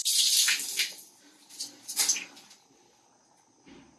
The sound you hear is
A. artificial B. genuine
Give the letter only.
B